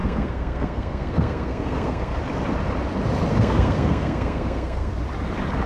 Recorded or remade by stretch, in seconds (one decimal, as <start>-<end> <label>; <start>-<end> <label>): 0.0-2.2 remade; 2.2-3.3 recorded; 3.3-4.9 remade; 4.9-5.7 recorded